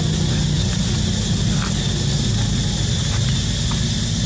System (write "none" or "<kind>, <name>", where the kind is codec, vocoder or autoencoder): none